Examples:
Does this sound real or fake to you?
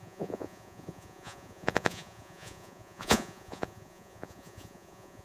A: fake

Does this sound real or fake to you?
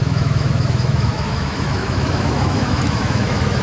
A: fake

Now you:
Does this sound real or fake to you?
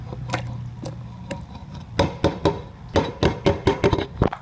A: real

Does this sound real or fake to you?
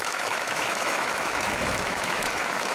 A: fake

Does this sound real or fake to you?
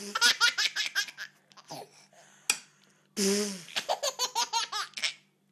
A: real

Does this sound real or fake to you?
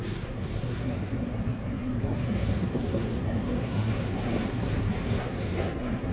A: fake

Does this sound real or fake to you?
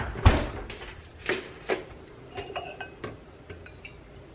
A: real